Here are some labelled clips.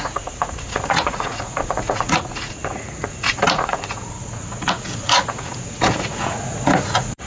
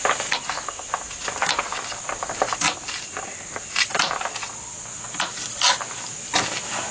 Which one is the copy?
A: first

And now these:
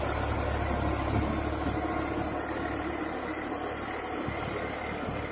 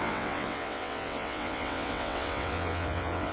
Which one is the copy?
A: second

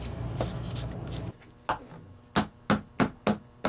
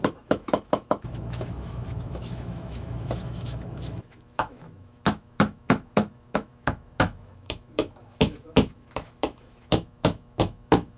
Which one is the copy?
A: second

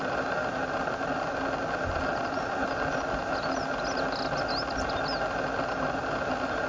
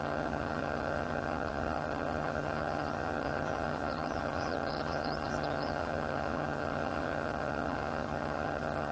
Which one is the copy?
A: second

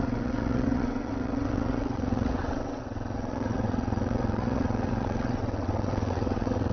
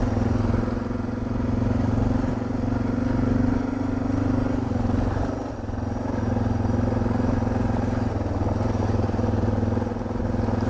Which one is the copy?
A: first